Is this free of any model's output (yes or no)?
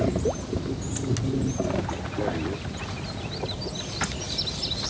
yes